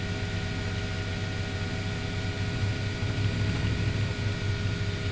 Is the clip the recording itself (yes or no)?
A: yes